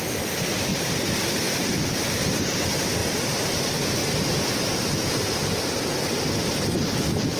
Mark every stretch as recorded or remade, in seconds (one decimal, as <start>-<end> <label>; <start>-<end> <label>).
0.0-0.7 recorded; 0.7-2.1 remade; 2.1-3.0 recorded; 3.0-3.6 remade; 3.6-4.0 recorded; 4.0-5.9 remade; 5.9-7.4 recorded

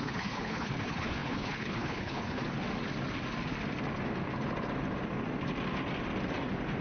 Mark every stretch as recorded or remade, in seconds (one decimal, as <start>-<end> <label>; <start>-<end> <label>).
0.0-2.4 remade; 2.4-6.8 recorded

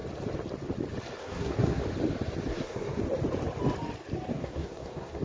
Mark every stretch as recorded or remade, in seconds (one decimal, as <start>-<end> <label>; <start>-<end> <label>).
0.0-1.2 recorded; 1.2-1.8 remade; 1.8-2.5 recorded; 2.5-3.0 remade; 3.0-4.3 recorded; 4.3-5.2 remade

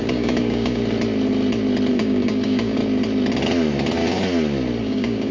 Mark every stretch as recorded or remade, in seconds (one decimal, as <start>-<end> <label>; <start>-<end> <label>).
0.0-0.8 remade; 0.8-1.9 recorded; 1.9-2.8 remade; 2.8-4.8 recorded; 4.8-5.3 remade

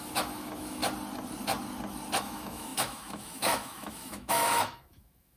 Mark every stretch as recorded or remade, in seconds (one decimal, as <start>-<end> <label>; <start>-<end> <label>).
0.0-0.8 remade; 0.8-2.2 recorded; 2.2-5.4 remade

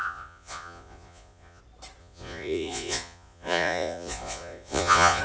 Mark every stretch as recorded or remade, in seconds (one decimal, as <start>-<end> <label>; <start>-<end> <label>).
0.0-1.6 remade; 1.6-2.0 recorded; 2.0-5.2 remade